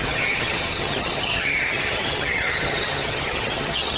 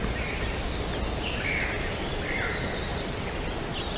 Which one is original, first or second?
second